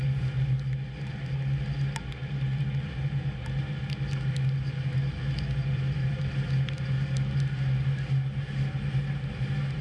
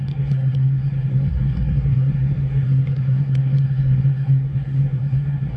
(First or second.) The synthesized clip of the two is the second